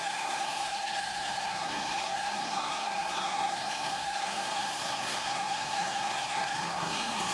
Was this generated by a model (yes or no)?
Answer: yes